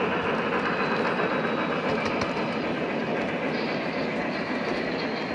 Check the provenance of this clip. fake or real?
real